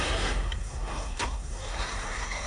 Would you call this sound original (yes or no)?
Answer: no